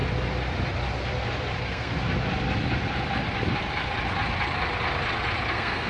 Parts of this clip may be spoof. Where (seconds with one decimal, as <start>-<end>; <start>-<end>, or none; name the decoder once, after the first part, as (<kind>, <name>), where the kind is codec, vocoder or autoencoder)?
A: 1.6-2.0 (codec, SNAC); 5.5-5.9